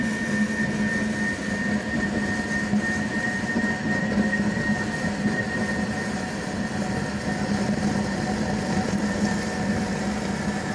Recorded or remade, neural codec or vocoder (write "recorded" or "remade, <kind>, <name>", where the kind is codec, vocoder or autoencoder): recorded